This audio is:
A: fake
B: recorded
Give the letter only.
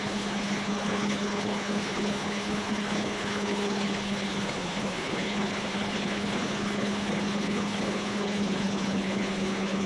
A